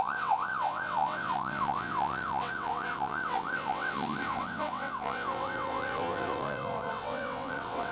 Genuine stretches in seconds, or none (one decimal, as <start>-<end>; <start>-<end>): none